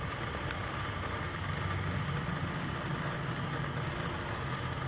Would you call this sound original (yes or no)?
yes